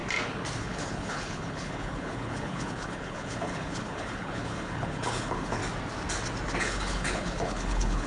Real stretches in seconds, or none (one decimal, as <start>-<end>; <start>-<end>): 0.0-0.6; 5.6-6.6